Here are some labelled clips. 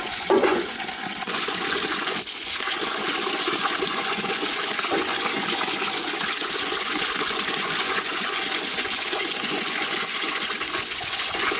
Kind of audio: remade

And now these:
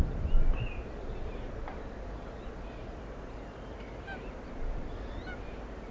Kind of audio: recorded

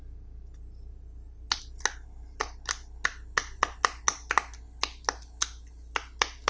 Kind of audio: recorded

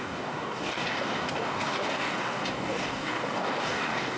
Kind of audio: remade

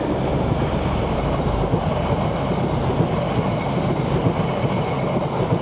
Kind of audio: recorded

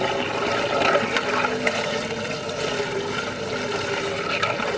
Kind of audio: recorded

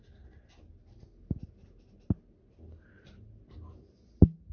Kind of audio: recorded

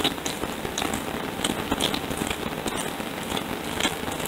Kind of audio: recorded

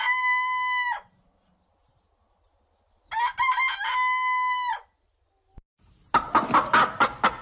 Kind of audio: recorded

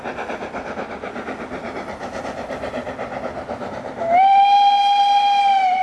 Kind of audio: recorded